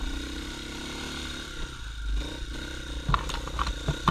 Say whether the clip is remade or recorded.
recorded